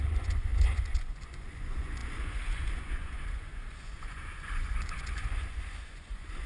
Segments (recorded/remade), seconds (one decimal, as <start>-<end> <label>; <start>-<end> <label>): 0.0-6.5 remade